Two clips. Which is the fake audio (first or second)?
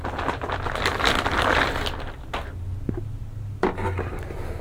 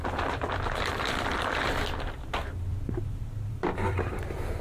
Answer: second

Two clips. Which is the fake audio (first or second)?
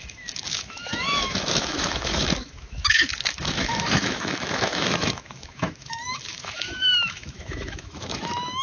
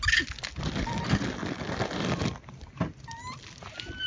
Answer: first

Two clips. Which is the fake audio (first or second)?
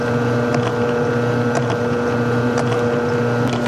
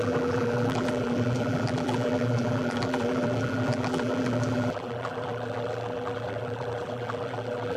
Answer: second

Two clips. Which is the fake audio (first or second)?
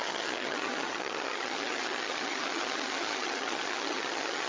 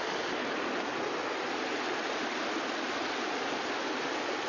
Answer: first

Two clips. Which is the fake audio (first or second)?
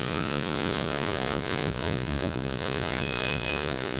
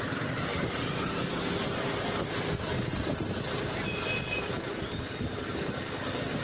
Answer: first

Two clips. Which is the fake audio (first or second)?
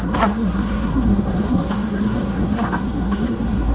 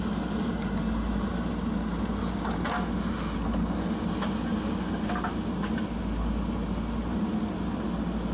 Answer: first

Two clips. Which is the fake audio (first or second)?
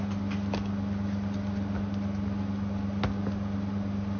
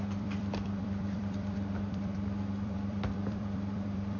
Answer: second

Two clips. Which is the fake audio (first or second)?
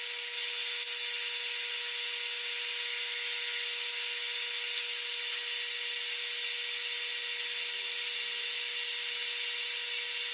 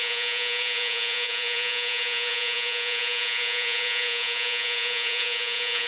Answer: second